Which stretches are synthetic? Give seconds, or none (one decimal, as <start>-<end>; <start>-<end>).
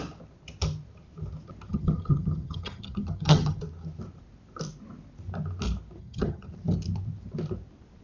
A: 1.7-3.6; 6.0-6.5